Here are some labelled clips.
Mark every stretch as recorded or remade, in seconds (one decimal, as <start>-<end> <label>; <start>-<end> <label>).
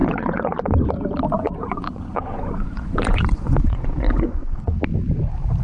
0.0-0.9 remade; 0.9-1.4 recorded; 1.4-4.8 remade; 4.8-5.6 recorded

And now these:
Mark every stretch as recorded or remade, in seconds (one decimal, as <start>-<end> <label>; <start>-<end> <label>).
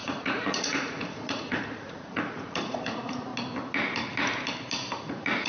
0.0-3.3 remade; 3.3-5.0 recorded; 5.0-5.5 remade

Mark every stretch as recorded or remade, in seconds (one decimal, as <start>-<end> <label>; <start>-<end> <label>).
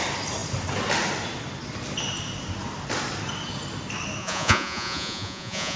0.0-4.2 recorded; 4.2-5.8 remade